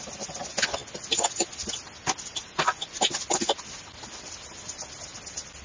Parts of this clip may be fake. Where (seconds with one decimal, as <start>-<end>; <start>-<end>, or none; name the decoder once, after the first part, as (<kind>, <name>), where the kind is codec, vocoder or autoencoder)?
none